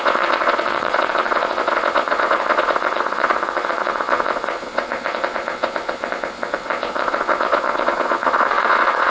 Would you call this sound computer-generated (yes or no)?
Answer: yes